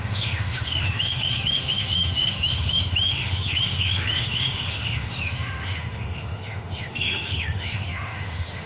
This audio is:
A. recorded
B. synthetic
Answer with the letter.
B